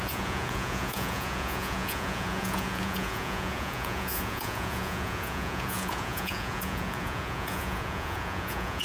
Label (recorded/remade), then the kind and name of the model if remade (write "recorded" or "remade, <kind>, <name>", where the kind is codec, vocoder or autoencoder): remade, vocoder, Vocos